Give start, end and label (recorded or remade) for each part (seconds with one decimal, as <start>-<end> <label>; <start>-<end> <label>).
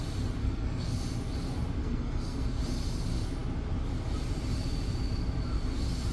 0.0-0.4 recorded; 0.4-1.0 remade; 1.0-1.8 recorded; 1.8-2.6 remade; 2.6-6.1 recorded